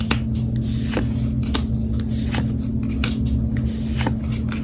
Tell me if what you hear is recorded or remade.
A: recorded